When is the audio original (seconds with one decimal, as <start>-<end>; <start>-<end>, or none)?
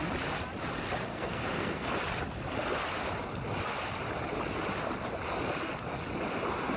0.0-1.1; 1.9-6.8